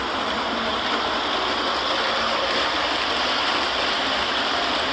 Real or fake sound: real